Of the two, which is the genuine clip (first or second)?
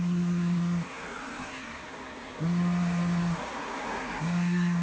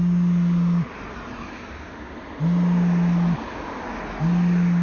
second